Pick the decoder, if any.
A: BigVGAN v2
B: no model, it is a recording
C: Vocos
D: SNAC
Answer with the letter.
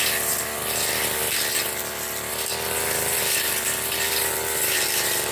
B